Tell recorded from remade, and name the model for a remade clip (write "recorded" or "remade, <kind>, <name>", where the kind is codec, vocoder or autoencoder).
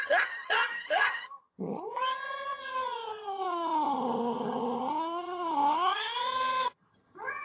remade, vocoder, HiFi-GAN